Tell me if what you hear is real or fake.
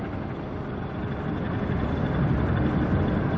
real